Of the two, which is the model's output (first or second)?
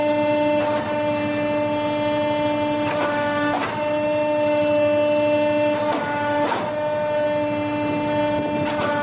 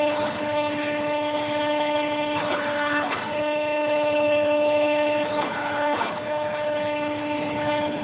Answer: second